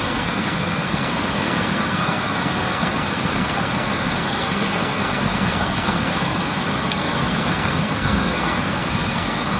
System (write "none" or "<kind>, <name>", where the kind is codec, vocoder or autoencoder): codec, SNAC